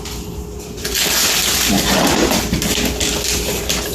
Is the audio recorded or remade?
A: recorded